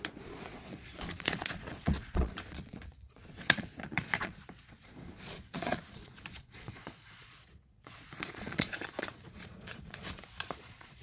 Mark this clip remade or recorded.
remade